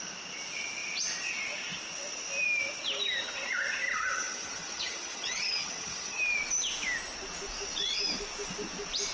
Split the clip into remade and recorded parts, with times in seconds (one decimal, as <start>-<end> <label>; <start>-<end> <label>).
0.0-3.9 recorded; 3.9-6.2 remade; 6.2-9.1 recorded